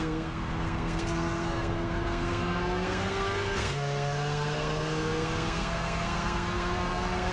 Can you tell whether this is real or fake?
fake